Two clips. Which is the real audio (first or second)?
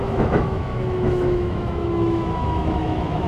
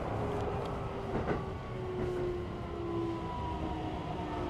second